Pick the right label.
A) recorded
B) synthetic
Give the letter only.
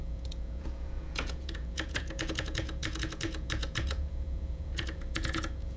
B